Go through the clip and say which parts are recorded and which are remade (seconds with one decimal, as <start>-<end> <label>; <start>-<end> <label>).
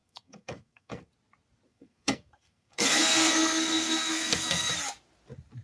0.0-1.1 remade; 1.1-1.7 recorded; 1.7-4.7 remade; 4.7-5.6 recorded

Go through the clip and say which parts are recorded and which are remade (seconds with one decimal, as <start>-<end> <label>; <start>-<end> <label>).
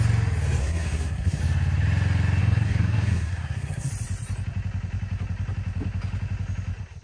0.0-0.6 recorded; 0.6-1.4 remade; 1.4-2.4 recorded; 2.4-3.9 remade; 3.9-7.0 recorded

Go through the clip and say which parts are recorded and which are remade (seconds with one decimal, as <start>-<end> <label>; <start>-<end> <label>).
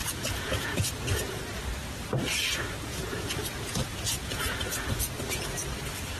0.0-1.4 remade; 1.4-2.9 recorded; 2.9-5.1 remade; 5.1-6.2 recorded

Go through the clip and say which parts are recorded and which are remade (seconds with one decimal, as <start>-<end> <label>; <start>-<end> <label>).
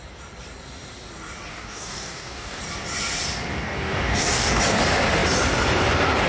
0.0-1.5 recorded; 1.5-2.6 remade; 2.6-3.5 recorded; 3.5-4.6 remade; 4.6-6.3 recorded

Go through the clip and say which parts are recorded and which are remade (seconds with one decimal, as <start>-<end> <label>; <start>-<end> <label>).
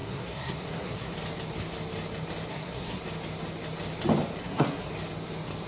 0.0-1.1 remade; 1.1-2.5 recorded; 2.5-3.0 remade; 3.0-4.4 recorded; 4.4-4.9 remade; 4.9-5.7 recorded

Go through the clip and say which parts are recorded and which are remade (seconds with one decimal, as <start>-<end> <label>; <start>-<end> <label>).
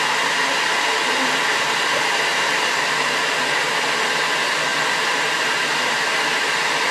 0.0-2.3 recorded; 2.3-3.4 remade; 3.4-6.9 recorded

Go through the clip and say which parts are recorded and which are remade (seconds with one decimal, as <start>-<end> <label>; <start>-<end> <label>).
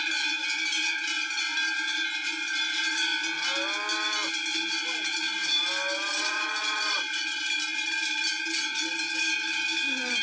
0.0-6.1 recorded; 6.1-7.4 remade; 7.4-10.2 recorded